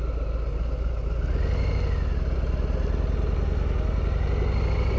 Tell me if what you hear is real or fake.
real